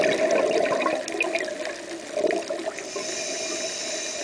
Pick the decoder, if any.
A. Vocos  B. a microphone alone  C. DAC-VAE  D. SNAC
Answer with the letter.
B